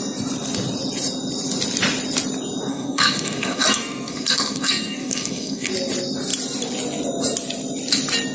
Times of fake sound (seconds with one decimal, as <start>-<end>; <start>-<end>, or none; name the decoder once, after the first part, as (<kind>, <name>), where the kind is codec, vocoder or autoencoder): 2.7-5.7 (codec, SNAC)